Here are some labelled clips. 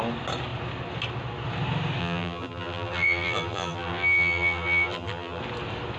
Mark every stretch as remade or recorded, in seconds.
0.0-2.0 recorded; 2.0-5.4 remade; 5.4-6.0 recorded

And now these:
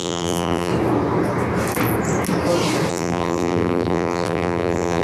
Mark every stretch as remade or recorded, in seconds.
0.0-0.7 remade; 0.7-2.9 recorded; 2.9-5.0 remade

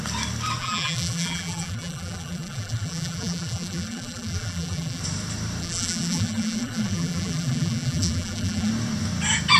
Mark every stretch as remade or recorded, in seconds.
0.0-0.6 recorded; 0.6-5.0 remade; 5.0-5.6 recorded; 5.6-8.7 remade; 8.7-9.6 recorded